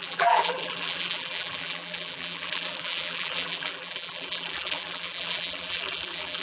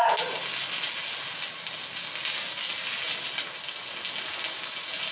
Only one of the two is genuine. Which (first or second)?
second